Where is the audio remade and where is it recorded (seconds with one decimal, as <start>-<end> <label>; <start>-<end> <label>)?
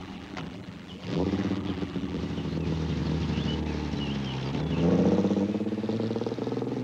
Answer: 0.0-2.2 remade; 2.2-6.8 recorded